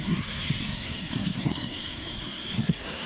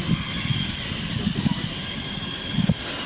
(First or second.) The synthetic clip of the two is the first